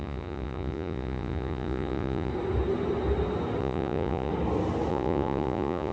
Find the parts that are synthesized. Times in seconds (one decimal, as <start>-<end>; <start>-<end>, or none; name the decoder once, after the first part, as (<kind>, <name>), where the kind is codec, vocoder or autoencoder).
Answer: 0.0-2.3 (vocoder, Vocos); 3.6-4.3; 4.9-5.9